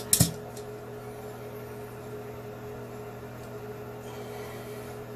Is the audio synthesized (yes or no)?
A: no